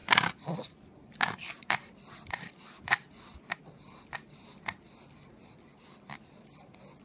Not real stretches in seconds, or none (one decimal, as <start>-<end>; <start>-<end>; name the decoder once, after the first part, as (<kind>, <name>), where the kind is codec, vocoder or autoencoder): none